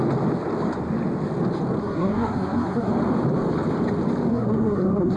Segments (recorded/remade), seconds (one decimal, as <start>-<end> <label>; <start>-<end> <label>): 0.0-1.8 recorded; 1.8-2.9 remade; 2.9-4.3 recorded; 4.3-5.2 remade